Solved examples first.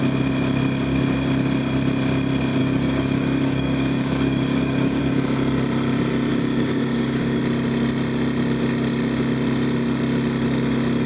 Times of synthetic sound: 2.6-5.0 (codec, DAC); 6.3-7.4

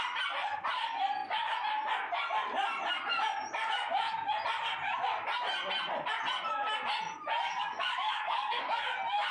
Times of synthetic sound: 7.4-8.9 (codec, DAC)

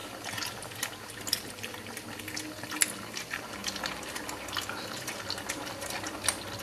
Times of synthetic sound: none

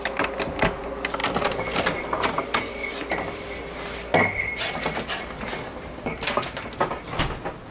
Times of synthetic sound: none